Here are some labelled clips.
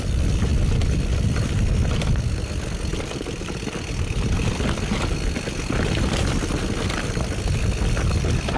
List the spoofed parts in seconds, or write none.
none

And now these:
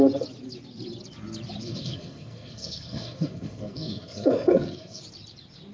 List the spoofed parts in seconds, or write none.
1.6-5.0 (codec, SNAC)

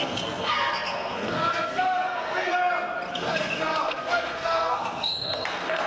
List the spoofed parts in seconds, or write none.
0.0-2.6 (codec, SNAC); 3.1-5.9

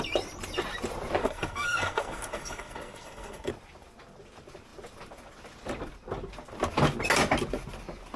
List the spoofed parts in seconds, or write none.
1.2-3.5 (codec, SNAC)